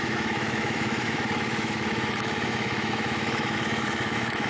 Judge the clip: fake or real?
fake